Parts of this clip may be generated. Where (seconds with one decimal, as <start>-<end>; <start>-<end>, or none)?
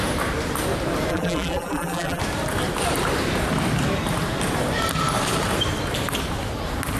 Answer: 1.1-2.2